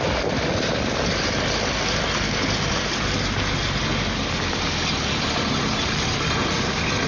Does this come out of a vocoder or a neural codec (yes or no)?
no